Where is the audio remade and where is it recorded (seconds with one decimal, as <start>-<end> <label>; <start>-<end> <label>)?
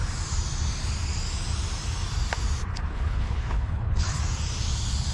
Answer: 0.0-2.7 recorded; 2.7-4.2 remade; 4.2-5.1 recorded